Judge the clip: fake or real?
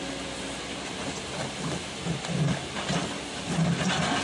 real